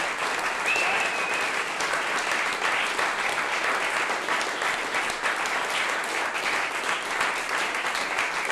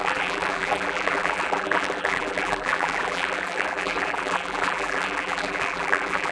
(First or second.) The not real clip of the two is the second